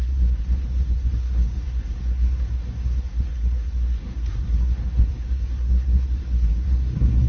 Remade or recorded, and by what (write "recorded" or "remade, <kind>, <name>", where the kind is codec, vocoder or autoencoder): remade, codec, SNAC